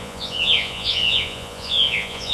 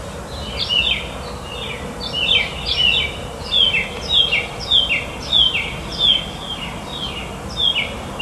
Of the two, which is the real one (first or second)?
second